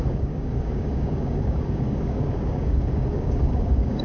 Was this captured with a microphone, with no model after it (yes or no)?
no